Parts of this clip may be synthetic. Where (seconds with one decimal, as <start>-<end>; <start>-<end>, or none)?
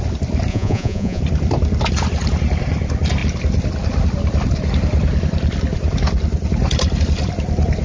0.5-1.2